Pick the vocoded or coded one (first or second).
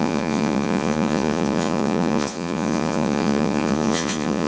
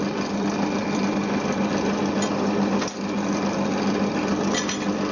first